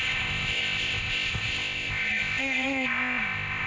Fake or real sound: fake